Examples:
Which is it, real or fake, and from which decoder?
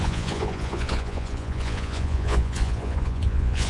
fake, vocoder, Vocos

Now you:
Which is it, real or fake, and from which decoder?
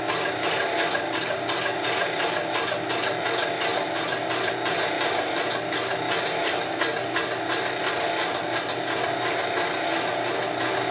real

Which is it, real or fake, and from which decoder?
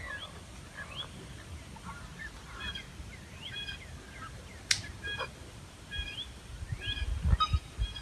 real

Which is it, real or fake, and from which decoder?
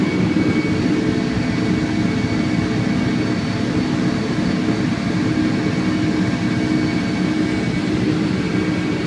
real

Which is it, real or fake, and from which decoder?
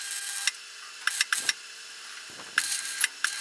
real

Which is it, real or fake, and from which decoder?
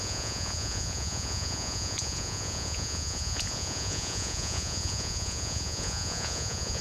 fake, vocoder, Vocos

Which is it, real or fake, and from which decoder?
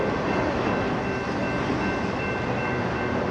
real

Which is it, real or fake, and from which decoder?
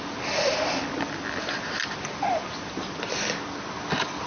real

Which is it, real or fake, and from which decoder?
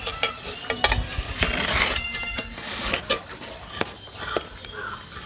real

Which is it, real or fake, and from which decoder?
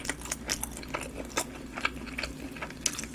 real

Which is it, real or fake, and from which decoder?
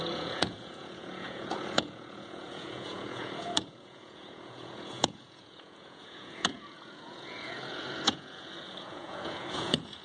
fake, vocoder, Vocos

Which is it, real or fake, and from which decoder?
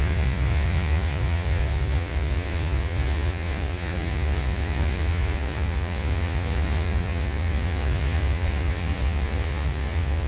fake, vocoder, Vocos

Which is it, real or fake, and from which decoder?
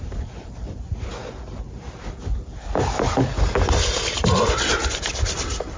real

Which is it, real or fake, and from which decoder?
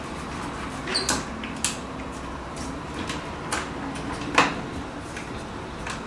real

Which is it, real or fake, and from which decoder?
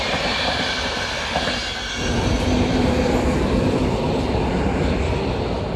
real